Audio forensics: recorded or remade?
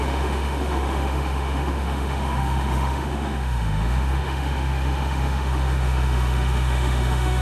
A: remade